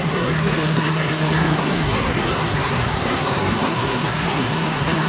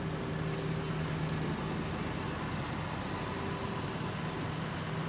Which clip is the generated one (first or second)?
first